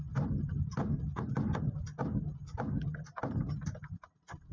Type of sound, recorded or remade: recorded